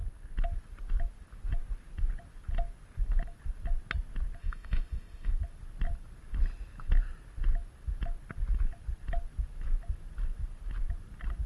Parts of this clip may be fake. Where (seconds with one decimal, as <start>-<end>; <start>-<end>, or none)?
4.4-5.3